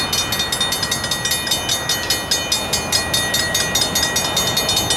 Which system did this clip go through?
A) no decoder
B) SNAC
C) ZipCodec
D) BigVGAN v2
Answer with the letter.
A